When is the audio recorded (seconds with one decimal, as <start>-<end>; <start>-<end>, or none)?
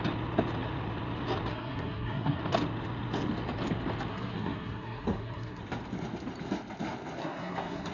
0.0-1.5; 2.4-4.1; 5.6-7.2